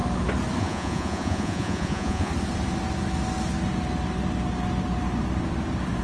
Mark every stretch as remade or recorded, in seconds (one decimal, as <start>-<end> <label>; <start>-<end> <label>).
0.0-0.6 recorded; 0.6-2.3 remade; 2.3-6.0 recorded